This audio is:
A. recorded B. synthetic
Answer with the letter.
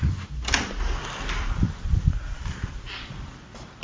A